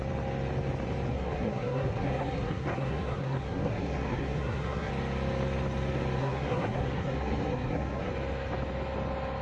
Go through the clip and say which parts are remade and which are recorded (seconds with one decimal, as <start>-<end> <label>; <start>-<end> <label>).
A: 0.0-1.1 recorded; 1.1-4.9 remade; 4.9-6.2 recorded; 6.2-8.1 remade; 8.1-9.4 recorded